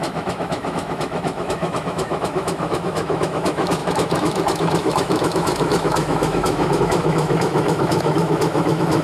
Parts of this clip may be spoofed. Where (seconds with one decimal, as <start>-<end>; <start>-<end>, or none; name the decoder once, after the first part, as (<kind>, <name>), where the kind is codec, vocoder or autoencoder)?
0.0-9.0 (autoencoder, DAC-VAE)